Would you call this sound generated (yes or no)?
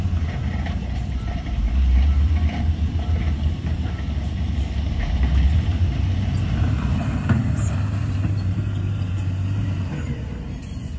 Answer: yes